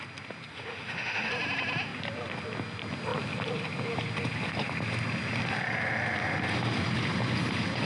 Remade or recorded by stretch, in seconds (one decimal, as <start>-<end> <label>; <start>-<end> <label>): 0.0-0.5 recorded; 0.5-1.3 remade; 1.3-7.8 recorded